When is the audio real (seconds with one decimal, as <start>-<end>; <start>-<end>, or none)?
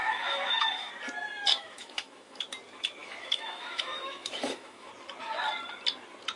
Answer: 0.9-1.5; 2.4-3.0; 4.9-6.4